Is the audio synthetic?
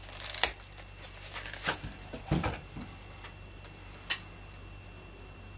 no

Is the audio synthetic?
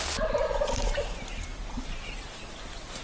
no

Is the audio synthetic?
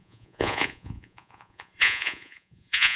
yes